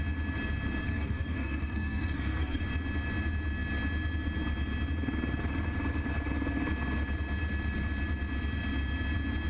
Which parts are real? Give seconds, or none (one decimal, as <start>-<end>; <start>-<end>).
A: 0.0-0.8; 2.6-9.5